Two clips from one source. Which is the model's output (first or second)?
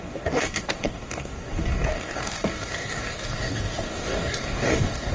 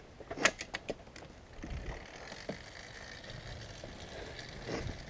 first